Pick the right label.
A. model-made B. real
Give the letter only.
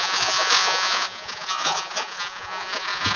A